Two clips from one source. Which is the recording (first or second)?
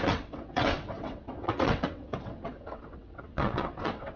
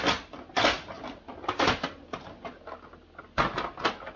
second